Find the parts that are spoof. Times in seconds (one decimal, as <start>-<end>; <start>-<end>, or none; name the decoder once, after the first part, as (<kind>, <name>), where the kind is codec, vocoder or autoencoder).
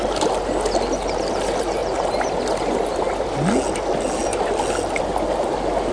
none